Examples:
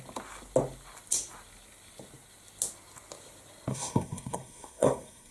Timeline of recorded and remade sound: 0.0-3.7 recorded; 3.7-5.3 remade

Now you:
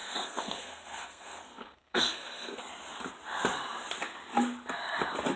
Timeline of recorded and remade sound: 0.0-2.6 remade; 2.6-5.4 recorded